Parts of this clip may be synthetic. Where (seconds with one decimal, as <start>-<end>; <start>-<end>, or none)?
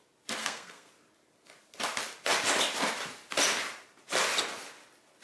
0.4-0.9